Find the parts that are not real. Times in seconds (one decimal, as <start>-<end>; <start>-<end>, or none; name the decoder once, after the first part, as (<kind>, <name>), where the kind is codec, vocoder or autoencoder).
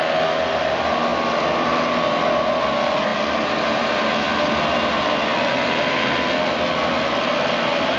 none